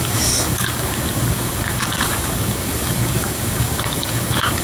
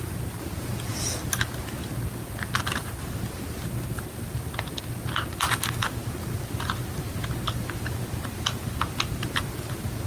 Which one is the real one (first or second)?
second